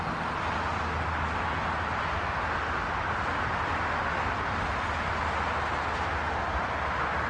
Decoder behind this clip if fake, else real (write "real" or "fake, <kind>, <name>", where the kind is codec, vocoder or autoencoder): real